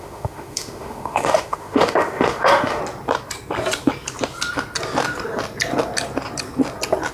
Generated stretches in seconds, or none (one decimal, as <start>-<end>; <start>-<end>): 0.0-2.8